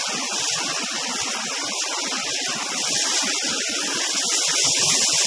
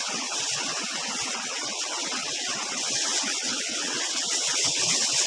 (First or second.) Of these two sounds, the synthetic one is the second